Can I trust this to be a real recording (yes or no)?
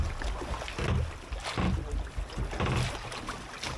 yes